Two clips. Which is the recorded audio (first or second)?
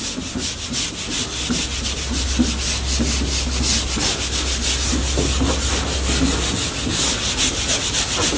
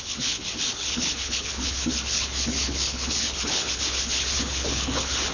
first